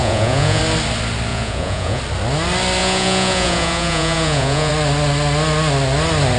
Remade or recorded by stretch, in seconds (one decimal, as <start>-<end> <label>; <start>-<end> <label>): 0.0-0.6 remade; 0.6-1.3 recorded; 1.3-2.0 remade; 2.0-2.8 recorded; 2.8-4.7 remade; 4.7-6.4 recorded